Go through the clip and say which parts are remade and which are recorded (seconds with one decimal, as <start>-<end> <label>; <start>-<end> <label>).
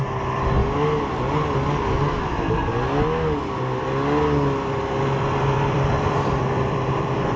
0.0-0.6 remade; 0.6-5.0 recorded; 5.0-7.4 remade